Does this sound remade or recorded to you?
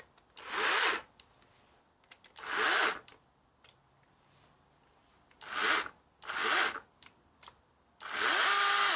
recorded